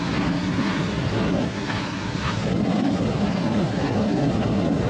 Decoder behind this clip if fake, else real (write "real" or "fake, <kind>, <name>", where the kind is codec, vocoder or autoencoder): fake, codec, SNAC